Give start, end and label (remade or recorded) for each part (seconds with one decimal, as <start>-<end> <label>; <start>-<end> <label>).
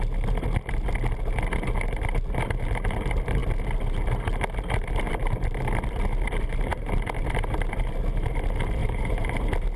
0.0-6.7 recorded; 6.7-7.5 remade; 7.5-8.8 recorded; 8.8-9.4 remade; 9.4-9.8 recorded